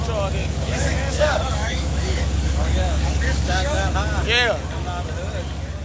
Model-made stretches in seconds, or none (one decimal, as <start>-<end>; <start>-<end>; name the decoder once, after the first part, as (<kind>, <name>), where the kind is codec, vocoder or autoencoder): 0.4-3.9 (codec, DAC)